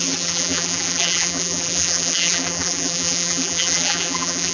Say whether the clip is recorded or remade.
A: remade